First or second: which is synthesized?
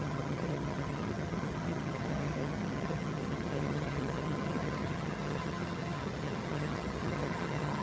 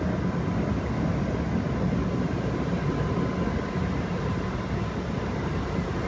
first